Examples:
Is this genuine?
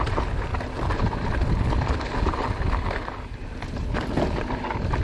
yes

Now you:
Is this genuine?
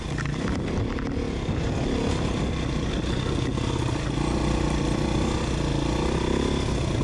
yes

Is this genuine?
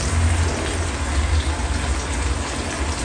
yes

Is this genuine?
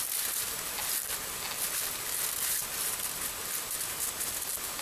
yes